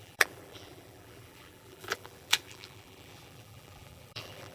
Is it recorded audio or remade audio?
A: remade